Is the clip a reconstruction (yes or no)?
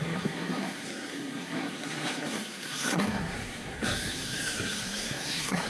yes